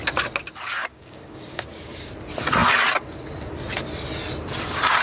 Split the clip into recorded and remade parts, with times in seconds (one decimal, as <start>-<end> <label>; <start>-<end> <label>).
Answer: 0.0-0.8 recorded; 0.8-2.1 remade; 2.1-5.0 recorded